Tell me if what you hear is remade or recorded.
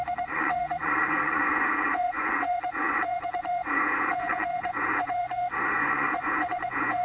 remade